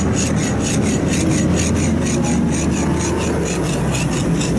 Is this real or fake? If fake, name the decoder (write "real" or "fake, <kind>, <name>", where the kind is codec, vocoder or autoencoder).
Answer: real